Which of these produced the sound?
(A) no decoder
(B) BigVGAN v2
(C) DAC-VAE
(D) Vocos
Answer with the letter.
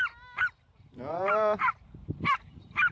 B